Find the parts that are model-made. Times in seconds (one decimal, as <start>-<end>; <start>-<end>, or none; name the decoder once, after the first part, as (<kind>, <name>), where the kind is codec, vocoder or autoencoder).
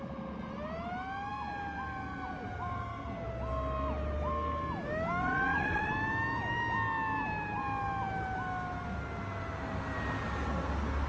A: 5.2-5.9 (vocoder, WaveNeXt)